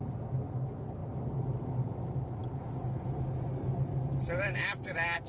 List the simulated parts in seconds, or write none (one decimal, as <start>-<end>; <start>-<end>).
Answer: none